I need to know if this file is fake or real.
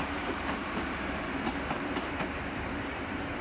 fake